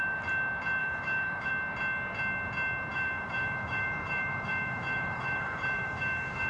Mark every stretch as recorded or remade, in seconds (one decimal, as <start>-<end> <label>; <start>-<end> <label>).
0.0-0.8 recorded; 0.8-1.5 remade; 1.5-2.9 recorded; 2.9-6.5 remade